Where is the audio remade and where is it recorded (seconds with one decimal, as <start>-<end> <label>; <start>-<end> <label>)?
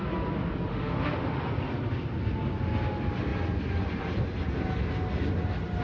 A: 0.0-0.7 recorded; 0.7-1.5 remade; 1.5-5.8 recorded